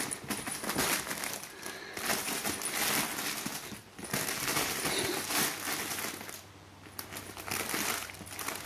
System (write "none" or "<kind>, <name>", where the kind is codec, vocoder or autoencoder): none